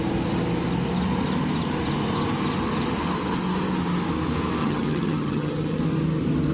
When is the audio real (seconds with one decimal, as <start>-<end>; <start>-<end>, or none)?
0.0-4.6; 5.8-6.5